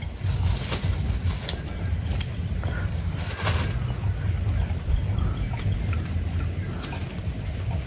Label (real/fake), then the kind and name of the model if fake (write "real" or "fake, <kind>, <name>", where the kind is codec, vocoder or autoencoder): real